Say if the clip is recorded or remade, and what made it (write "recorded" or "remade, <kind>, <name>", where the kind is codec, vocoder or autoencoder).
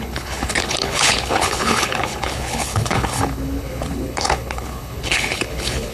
remade, codec, HILCodec